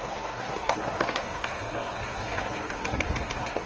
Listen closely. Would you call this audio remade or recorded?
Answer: remade